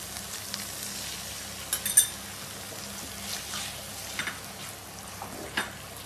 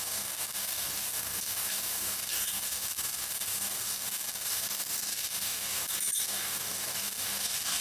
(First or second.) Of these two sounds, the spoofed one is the second